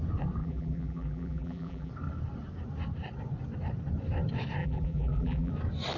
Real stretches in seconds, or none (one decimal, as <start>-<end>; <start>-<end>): 0.0-0.4; 1.9-4.6; 5.5-6.0